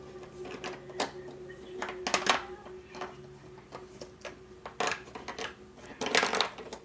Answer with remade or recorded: recorded